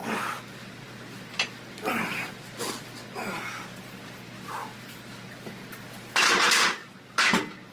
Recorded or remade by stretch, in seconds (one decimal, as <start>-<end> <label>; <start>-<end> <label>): 0.0-7.7 recorded

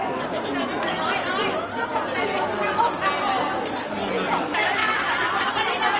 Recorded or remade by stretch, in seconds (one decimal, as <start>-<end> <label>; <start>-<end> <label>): 0.0-6.0 recorded

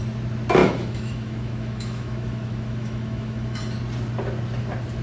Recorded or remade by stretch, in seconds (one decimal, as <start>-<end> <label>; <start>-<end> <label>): 0.0-0.6 recorded; 0.6-3.6 remade; 3.6-5.0 recorded